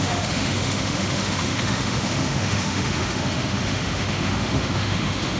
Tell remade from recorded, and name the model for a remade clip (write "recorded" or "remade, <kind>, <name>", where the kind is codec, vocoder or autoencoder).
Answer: remade, autoencoder, DAC-VAE